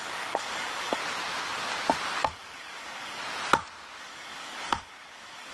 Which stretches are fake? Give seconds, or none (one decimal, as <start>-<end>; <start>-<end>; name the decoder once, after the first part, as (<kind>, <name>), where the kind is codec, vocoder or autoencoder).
0.0-1.0 (codec, DAC); 2.2-3.2; 4.0-5.5